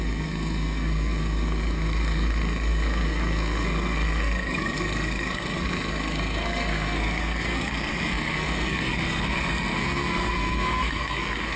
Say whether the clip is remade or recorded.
remade